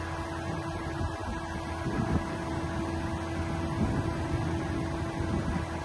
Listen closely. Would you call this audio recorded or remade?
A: recorded